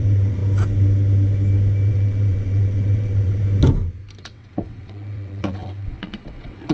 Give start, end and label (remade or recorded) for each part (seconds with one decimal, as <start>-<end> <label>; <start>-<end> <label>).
0.0-0.4 remade; 0.4-1.9 recorded; 1.9-3.4 remade; 3.4-4.2 recorded; 4.2-6.7 remade